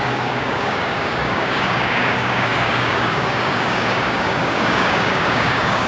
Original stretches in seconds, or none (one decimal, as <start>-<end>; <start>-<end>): none